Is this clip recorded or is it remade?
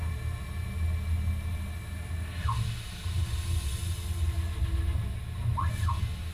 recorded